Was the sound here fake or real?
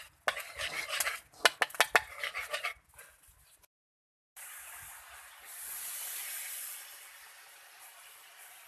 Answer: real